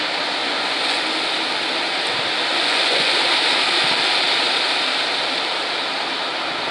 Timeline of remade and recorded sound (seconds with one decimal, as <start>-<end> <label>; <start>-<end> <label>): 0.0-0.4 recorded; 0.4-1.0 remade; 1.0-2.5 recorded; 2.5-3.1 remade; 3.1-6.7 recorded